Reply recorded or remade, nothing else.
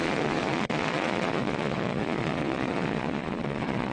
remade